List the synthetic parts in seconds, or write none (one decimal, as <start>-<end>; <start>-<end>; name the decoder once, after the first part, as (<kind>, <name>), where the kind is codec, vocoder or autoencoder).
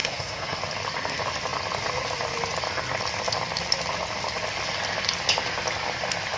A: 0.0-0.6 (codec, SNAC)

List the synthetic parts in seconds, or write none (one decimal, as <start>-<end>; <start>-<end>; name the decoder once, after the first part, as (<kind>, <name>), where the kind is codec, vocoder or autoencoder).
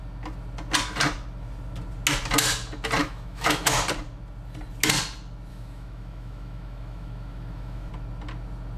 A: 3.0-3.8 (autoencoder, DAC-VAE); 5.5-7.9